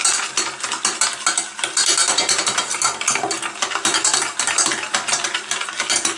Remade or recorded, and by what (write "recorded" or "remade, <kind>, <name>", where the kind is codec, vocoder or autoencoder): recorded